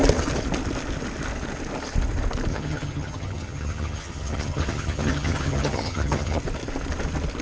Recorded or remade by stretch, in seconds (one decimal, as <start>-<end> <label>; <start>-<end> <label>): 0.0-2.5 recorded; 2.5-6.4 remade; 6.4-7.4 recorded